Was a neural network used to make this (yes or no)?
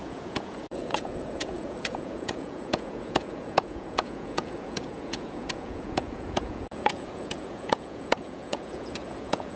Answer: yes